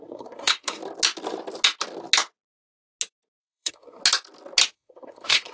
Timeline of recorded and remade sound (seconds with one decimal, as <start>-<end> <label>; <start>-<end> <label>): 0.0-0.8 remade; 0.8-3.4 recorded; 3.4-4.0 remade; 4.0-4.7 recorded; 4.7-5.5 remade